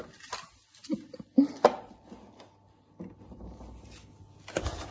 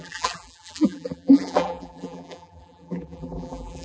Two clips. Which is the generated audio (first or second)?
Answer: second